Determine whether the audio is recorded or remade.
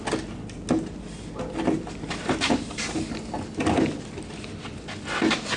recorded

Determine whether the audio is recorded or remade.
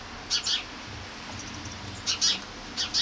recorded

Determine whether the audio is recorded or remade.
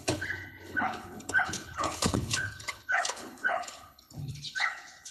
remade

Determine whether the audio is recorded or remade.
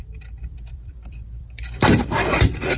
remade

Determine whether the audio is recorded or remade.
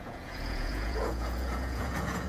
remade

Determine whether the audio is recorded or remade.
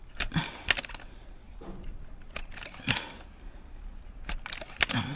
recorded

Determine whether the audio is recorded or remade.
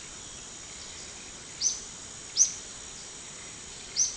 recorded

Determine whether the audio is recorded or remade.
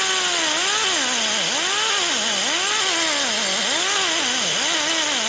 recorded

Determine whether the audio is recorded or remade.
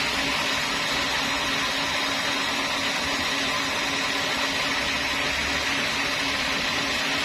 recorded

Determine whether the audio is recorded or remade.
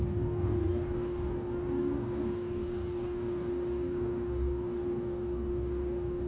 remade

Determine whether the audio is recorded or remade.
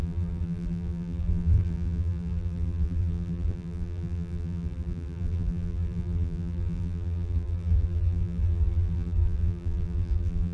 remade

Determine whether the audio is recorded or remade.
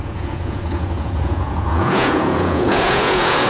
remade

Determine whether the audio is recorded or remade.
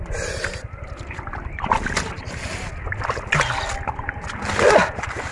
recorded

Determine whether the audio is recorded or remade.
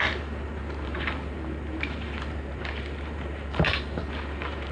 remade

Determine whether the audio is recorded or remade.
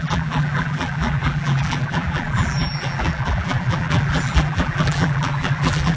remade